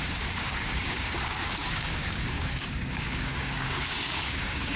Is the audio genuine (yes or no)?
no